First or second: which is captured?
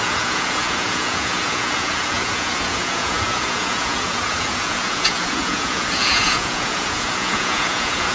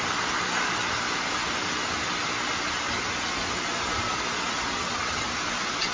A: second